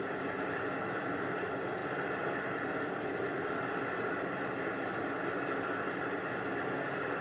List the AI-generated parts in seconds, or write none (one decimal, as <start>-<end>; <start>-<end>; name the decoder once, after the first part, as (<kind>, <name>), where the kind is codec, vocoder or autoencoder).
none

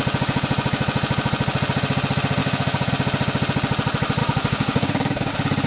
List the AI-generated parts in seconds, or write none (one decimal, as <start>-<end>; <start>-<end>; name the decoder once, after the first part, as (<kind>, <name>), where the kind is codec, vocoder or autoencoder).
2.4-2.9 (codec, DAC); 4.2-5.3

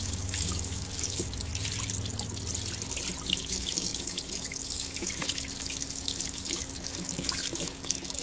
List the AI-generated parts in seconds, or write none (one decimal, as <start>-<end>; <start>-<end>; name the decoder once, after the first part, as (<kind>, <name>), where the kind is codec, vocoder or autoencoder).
0.0-1.5 (codec, DAC); 3.3-8.2

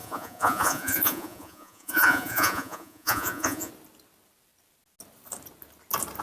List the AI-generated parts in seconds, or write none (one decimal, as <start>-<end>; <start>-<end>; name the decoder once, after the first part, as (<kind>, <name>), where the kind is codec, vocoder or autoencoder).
0.0-3.7 (vocoder, Vocos)

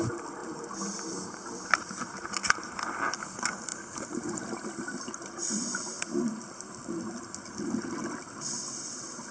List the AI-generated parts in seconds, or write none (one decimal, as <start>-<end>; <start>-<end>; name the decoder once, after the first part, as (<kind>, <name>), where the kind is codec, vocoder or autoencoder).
none

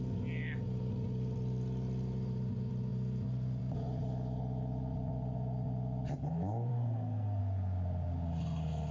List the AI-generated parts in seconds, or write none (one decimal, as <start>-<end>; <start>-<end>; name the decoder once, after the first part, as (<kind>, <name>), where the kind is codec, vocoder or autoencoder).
6.7-7.4 (codec, SNAC)

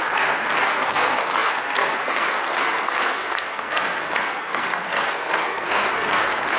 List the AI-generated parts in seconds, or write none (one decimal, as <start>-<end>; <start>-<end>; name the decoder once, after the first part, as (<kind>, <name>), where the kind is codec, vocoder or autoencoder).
0.0-6.6 (codec, SNAC)